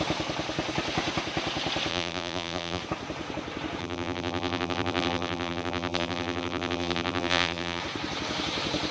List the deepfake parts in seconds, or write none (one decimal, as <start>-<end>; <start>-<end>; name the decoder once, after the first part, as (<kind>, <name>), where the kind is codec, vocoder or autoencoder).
1.9-2.8 (vocoder, BigVGAN v2); 3.8-7.8